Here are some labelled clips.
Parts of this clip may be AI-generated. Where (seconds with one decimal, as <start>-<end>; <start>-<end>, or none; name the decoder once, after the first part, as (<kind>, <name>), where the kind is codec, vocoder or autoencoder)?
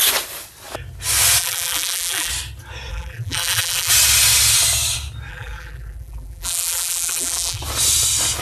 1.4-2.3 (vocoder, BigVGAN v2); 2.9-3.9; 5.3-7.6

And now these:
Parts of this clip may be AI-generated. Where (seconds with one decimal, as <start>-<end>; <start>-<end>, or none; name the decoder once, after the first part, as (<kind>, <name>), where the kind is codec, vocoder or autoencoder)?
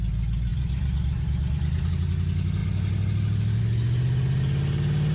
0.5-1.9 (vocoder, BigVGAN v2)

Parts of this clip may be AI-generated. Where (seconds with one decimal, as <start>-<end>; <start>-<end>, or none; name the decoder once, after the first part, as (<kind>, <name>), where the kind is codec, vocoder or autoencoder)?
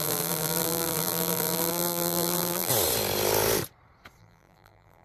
0.0-2.7 (vocoder, BigVGAN v2); 4.2-5.0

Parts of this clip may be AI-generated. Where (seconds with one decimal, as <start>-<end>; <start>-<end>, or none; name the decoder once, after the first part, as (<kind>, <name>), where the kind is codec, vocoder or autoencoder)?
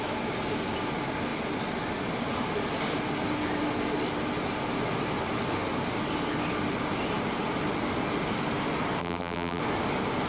9.0-9.6 (vocoder, BigVGAN v2)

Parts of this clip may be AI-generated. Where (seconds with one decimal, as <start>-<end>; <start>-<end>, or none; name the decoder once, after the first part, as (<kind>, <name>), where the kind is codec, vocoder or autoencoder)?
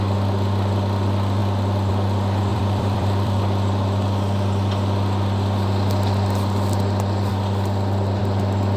2.5-3.4 (vocoder, BigVGAN v2)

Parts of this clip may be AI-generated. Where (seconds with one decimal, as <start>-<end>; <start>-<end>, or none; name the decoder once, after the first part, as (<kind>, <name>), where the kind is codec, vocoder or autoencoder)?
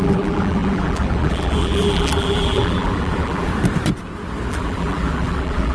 0.0-3.5 (vocoder, BigVGAN v2); 4.5-5.7